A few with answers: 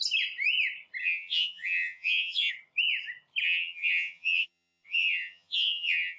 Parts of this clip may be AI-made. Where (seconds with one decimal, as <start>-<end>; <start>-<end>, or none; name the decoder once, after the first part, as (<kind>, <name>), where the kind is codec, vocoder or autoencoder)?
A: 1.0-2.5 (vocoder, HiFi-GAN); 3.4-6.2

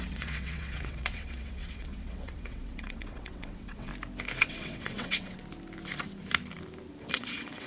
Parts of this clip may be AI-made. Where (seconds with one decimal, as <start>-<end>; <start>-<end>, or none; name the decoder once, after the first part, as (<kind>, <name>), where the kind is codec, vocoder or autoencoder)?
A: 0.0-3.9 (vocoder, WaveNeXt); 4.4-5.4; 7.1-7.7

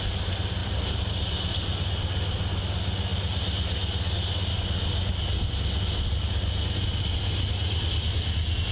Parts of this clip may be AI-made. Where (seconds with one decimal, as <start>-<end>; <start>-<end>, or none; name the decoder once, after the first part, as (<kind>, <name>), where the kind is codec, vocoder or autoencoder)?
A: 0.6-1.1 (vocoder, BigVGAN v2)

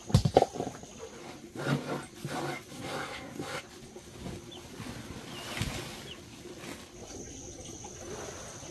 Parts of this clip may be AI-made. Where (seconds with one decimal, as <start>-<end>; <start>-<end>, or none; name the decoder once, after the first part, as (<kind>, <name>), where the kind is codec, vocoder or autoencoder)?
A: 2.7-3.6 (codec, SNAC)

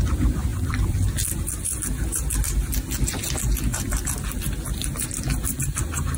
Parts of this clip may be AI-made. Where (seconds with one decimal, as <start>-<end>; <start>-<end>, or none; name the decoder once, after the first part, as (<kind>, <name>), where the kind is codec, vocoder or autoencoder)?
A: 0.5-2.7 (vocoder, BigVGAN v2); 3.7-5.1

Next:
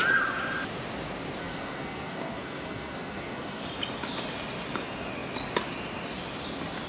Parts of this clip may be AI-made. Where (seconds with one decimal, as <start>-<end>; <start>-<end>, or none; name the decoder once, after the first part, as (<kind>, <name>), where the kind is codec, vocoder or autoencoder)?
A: 1.4-3.6 (codec, SNAC)

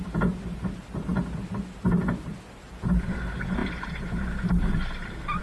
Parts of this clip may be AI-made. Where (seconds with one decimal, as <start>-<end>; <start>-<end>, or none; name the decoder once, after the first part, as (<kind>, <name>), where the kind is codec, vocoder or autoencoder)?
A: none